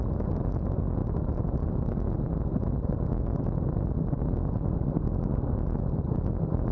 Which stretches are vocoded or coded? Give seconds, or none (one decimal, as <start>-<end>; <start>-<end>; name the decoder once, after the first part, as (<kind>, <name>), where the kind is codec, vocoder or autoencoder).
none